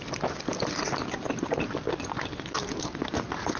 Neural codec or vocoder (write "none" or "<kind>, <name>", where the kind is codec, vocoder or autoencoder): none